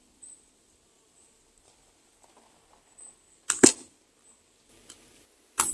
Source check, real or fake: real